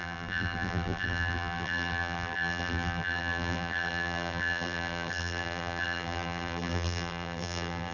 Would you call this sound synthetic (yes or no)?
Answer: yes